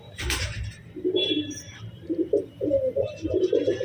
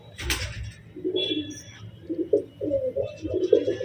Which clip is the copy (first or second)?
first